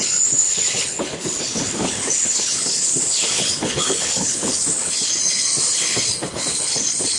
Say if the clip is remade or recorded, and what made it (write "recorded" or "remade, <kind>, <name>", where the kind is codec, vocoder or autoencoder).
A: remade, codec, HILCodec